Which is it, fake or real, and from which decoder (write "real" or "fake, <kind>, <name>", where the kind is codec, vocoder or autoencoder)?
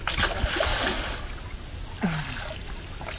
real